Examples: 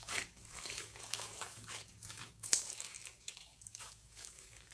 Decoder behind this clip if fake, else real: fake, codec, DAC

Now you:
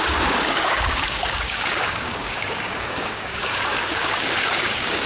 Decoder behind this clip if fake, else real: fake, codec, DAC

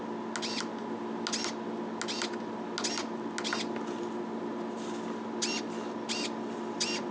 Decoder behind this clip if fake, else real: real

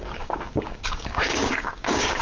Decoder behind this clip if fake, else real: fake, codec, DAC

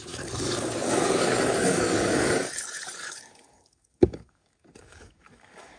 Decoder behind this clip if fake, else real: fake, codec, DAC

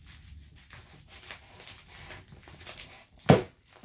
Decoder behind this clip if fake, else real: real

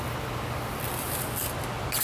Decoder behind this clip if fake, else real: real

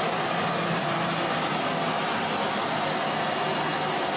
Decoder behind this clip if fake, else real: real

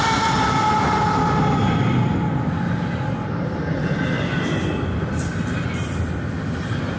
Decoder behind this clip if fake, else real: real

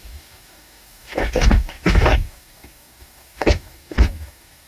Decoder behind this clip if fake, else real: fake, codec, DAC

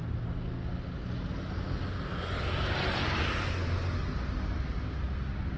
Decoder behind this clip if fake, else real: real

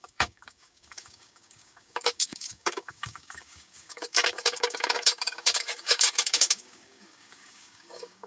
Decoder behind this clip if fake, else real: fake, codec, DAC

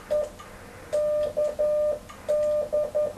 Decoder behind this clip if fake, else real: real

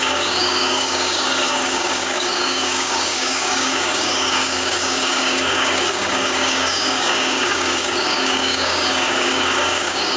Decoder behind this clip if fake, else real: fake, codec, DAC